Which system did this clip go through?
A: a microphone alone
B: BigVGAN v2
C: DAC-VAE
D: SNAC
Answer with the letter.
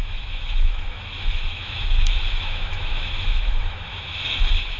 C